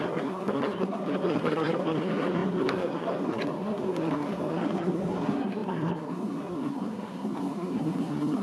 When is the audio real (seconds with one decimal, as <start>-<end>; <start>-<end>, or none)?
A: none